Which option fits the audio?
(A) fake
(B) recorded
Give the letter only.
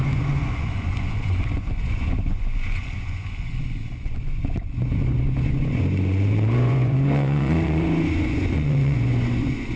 A